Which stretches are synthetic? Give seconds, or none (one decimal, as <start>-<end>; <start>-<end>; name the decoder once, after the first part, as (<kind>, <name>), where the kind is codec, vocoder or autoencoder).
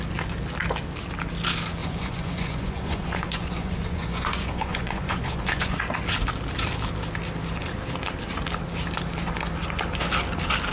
1.8-5.8 (vocoder, Vocos)